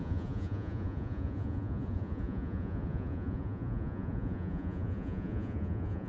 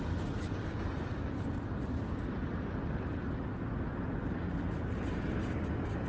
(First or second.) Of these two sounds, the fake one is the first